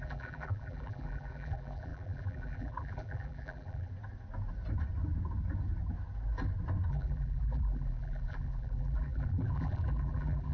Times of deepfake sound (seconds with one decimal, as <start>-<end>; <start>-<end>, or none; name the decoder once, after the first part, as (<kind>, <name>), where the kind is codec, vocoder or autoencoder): 0.0-3.9 (vocoder, BigVGAN v2); 6.9-10.5